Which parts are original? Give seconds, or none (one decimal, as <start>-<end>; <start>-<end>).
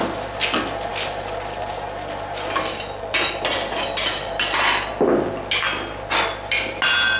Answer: 0.0-7.2